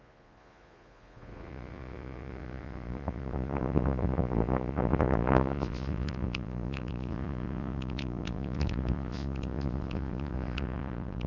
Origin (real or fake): fake